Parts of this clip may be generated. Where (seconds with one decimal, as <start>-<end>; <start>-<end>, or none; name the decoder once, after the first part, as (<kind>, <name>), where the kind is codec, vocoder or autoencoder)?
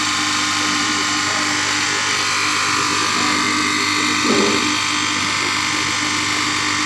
0.0-6.9 (vocoder, BigVGAN v2)